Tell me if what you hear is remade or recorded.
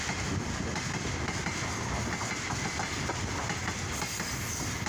recorded